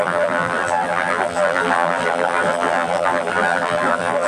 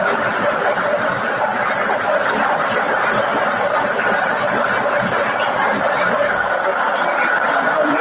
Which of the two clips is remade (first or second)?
first